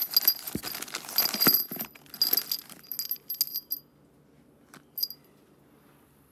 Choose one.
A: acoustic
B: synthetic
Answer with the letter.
A